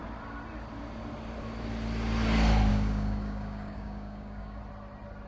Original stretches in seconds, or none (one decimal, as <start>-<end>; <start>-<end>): 0.0-2.7; 4.6-5.3